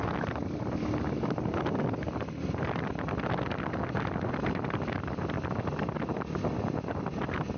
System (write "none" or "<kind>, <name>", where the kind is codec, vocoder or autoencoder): none